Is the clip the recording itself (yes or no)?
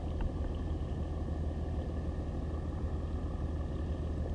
yes